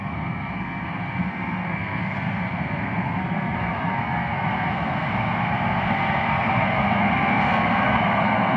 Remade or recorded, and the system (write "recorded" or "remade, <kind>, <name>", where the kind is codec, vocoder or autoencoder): remade, codec, SNAC